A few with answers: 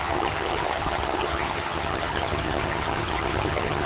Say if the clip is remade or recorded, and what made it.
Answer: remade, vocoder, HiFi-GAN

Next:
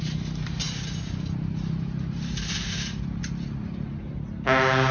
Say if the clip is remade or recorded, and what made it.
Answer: recorded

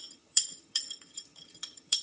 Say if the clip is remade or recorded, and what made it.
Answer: remade, vocoder, HiFi-GAN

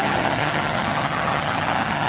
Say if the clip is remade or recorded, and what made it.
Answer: remade, vocoder, HiFi-GAN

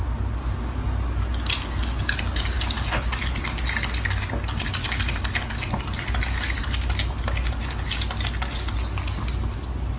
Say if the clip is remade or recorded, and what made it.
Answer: recorded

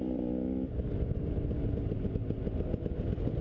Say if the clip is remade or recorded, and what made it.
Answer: recorded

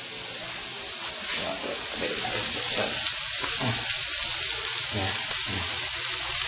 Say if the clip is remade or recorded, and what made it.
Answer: recorded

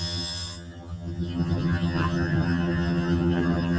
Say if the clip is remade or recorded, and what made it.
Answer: remade, vocoder, HiFi-GAN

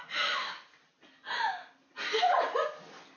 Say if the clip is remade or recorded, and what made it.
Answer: recorded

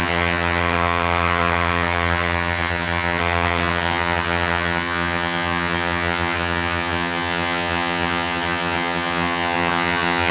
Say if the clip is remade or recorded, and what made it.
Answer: remade, vocoder, HiFi-GAN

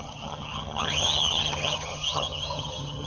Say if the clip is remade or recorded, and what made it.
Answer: remade, vocoder, HiFi-GAN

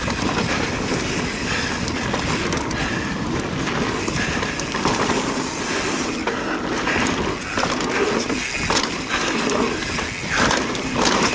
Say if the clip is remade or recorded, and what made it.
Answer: recorded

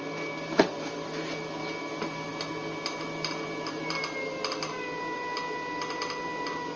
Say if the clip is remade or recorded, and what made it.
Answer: recorded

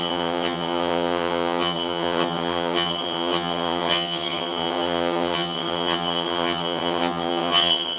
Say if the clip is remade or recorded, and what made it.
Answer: remade, vocoder, HiFi-GAN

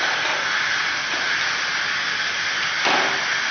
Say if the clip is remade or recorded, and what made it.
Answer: recorded